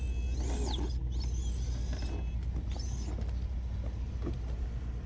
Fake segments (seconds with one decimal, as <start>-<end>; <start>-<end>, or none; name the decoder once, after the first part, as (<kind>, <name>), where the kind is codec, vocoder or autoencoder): none